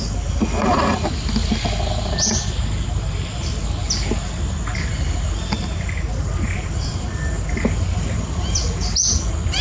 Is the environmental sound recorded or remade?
recorded